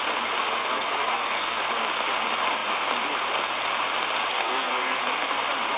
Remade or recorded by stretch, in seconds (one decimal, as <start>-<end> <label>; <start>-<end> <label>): 0.0-0.6 recorded; 0.6-1.6 remade; 1.6-4.3 recorded; 4.3-5.0 remade; 5.0-5.8 recorded